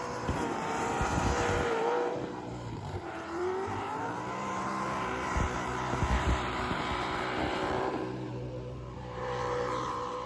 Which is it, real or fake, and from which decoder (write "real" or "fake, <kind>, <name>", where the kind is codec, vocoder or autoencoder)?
fake, vocoder, BigVGAN v2